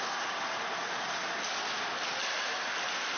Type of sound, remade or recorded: recorded